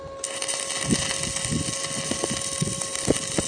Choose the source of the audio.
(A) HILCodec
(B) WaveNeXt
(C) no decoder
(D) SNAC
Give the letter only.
C